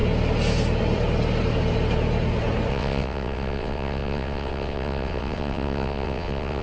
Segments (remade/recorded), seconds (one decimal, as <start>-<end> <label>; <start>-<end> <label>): 0.0-2.7 recorded; 2.7-6.6 remade